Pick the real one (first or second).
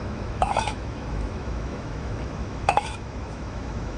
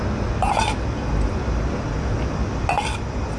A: second